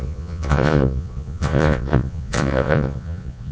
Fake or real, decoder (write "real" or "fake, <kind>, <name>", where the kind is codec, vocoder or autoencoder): fake, vocoder, Vocos